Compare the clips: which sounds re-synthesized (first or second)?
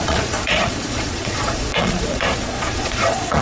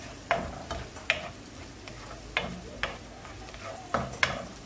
first